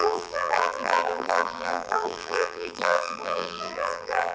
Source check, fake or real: fake